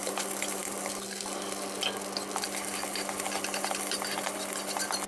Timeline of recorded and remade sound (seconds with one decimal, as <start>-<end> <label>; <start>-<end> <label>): 0.0-0.6 remade; 0.6-3.6 recorded; 3.6-5.1 remade